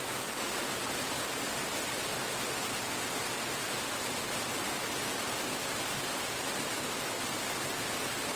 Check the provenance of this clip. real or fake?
real